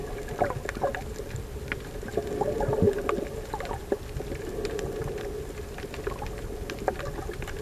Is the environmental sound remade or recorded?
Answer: recorded